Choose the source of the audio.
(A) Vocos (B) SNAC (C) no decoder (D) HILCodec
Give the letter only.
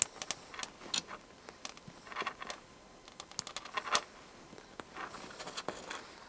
C